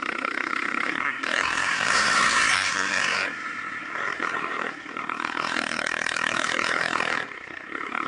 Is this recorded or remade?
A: remade